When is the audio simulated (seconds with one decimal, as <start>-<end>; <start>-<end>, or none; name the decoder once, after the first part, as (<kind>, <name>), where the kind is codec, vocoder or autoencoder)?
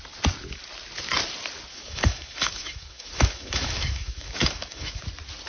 1.7-5.0 (autoencoder, DAC-VAE)